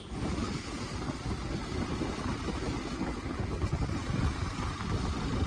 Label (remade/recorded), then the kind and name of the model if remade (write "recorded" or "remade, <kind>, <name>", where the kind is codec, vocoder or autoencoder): recorded